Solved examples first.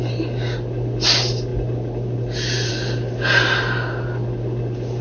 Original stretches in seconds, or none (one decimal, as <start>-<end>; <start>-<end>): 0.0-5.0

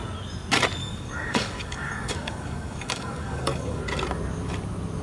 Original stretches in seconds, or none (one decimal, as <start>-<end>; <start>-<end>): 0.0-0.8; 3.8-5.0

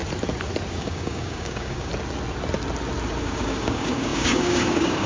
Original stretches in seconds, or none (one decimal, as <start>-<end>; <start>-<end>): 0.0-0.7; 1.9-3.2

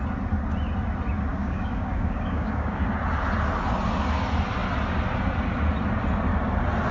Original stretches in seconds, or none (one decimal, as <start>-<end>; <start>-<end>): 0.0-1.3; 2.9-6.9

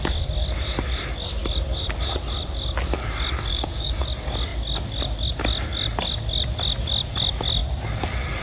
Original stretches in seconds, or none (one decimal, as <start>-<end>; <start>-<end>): 0.0-3.5; 4.0-8.4

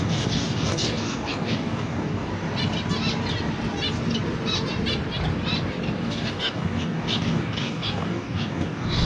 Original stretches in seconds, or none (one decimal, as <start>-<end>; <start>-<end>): 2.3-6.0